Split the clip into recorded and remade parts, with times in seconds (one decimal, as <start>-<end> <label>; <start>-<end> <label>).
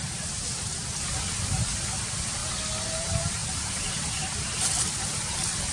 0.0-5.7 recorded